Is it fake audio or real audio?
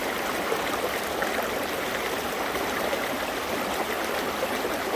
real